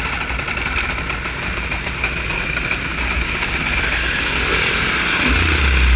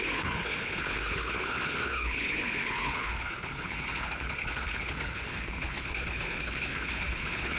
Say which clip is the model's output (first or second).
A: second